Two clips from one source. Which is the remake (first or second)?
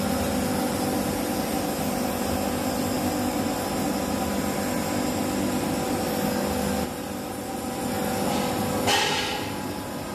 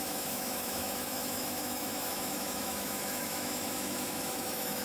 second